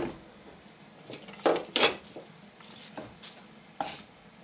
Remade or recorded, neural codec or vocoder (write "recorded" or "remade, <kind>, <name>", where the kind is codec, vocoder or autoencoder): recorded